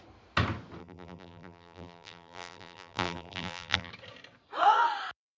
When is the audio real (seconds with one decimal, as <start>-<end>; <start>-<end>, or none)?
0.0-0.8; 3.9-5.4